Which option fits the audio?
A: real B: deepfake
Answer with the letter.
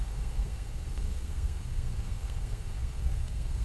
B